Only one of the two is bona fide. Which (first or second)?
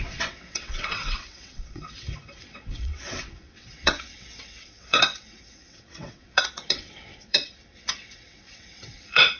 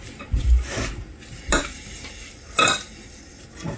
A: second